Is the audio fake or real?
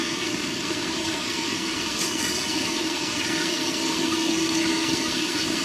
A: fake